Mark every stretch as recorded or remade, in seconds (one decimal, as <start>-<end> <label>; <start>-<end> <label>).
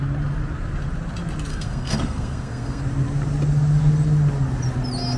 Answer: 0.0-1.5 recorded; 1.5-2.8 remade; 2.8-5.2 recorded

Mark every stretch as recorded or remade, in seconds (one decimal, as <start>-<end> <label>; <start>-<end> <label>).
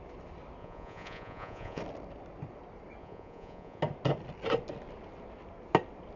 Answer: 0.0-0.6 recorded; 0.6-1.8 remade; 1.8-3.0 recorded; 3.0-3.8 remade; 3.8-6.2 recorded